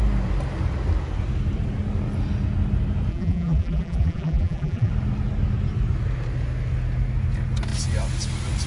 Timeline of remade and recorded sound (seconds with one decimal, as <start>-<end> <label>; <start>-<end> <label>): 0.0-3.1 recorded; 3.1-4.9 remade; 4.9-8.7 recorded

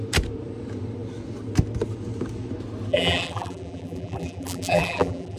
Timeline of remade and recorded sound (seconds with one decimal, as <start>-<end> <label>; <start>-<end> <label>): 0.0-2.9 recorded; 2.9-5.4 remade

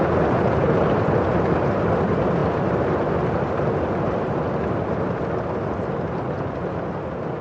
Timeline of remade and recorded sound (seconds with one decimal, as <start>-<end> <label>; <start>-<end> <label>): 0.0-7.4 recorded